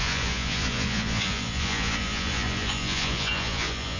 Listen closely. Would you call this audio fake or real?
fake